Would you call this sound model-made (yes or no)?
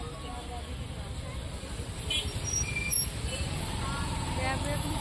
no